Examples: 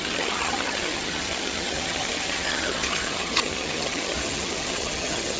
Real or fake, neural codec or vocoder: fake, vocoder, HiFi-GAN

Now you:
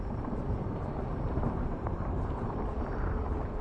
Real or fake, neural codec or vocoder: fake, vocoder, BigVGAN v2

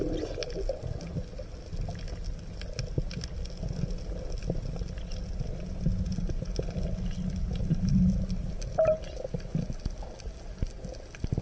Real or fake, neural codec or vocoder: real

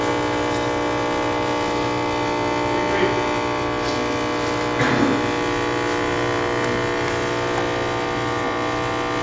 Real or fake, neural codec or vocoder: real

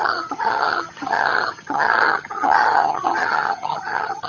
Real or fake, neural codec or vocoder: fake, vocoder, HiFi-GAN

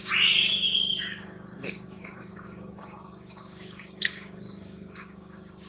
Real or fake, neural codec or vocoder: fake, codec, DAC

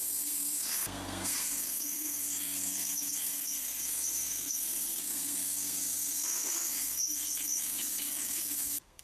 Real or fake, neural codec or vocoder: fake, codec, SNAC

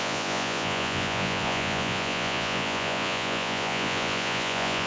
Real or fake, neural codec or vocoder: fake, vocoder, Vocos